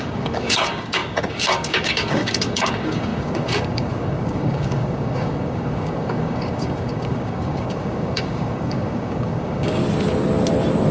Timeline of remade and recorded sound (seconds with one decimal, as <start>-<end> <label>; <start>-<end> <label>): 0.0-9.8 remade; 9.8-10.9 recorded